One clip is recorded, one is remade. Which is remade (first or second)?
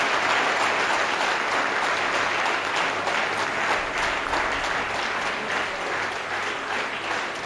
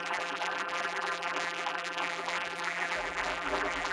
second